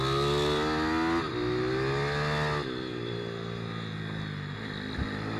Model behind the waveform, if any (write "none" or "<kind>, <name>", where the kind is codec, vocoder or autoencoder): none